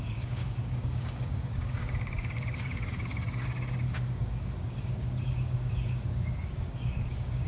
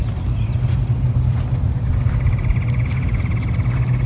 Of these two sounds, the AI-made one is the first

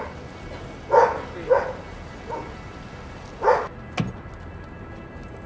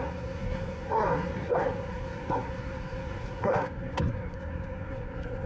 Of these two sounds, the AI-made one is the second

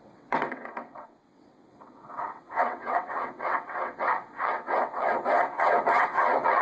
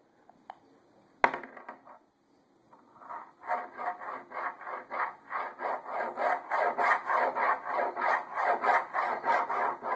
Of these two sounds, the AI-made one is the first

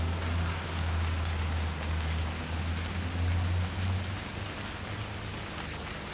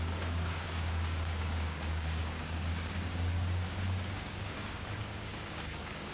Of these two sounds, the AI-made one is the second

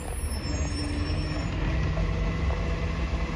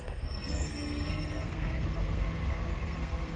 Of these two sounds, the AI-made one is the second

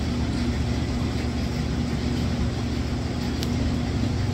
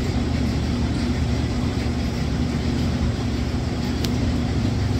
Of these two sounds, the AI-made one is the second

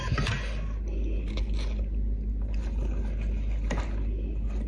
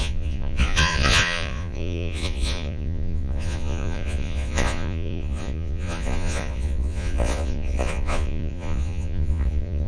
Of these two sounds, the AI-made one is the second